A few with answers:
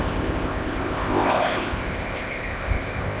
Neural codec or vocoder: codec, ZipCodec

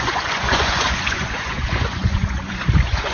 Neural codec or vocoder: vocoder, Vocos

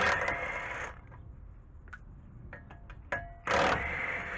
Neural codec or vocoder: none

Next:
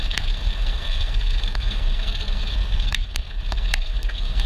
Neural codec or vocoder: codec, SNAC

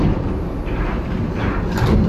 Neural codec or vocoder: none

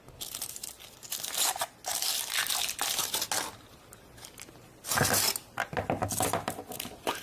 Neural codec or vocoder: none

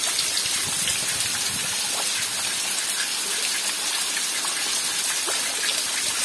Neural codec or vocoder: none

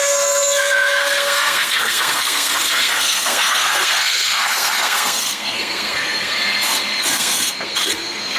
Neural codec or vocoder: codec, SNAC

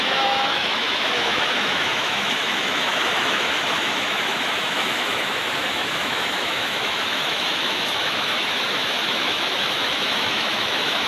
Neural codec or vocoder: autoencoder, DAC-VAE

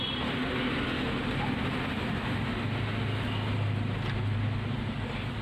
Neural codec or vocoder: none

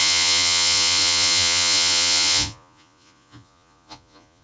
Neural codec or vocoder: vocoder, Vocos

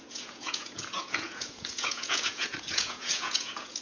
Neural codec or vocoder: vocoder, Vocos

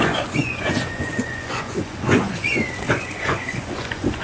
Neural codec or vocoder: vocoder, Vocos